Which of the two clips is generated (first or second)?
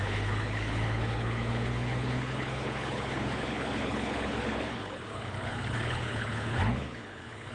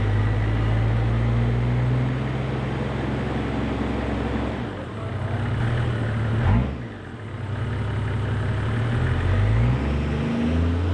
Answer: first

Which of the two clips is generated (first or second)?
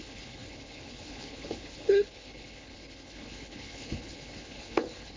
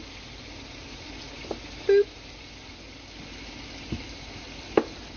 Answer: first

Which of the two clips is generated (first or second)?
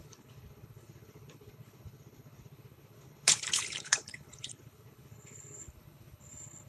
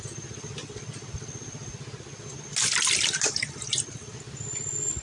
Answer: first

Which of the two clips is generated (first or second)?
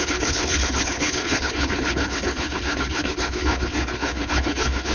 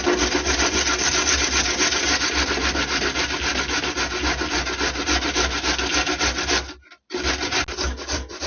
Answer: first